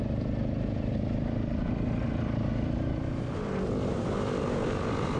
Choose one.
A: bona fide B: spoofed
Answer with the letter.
A